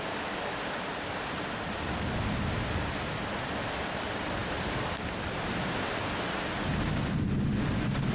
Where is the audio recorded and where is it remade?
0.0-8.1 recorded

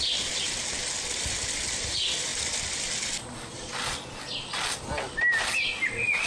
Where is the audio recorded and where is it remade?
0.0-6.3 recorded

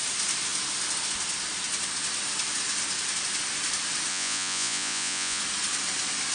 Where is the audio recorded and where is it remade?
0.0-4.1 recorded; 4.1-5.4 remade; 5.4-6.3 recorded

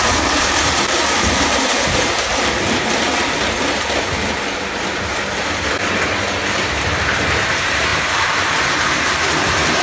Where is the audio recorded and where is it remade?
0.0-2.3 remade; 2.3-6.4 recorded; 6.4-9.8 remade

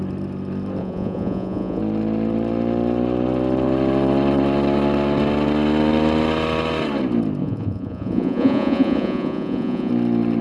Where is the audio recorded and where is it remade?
0.0-0.8 recorded; 0.8-1.8 remade; 1.8-7.4 recorded; 7.4-9.9 remade; 9.9-10.4 recorded

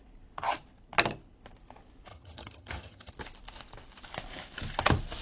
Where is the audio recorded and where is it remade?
0.0-2.1 recorded; 2.1-3.1 remade; 3.1-5.2 recorded